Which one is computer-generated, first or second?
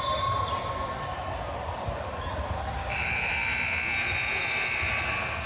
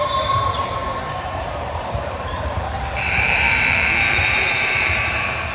second